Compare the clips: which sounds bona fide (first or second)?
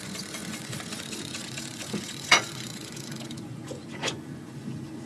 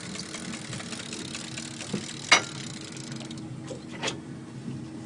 second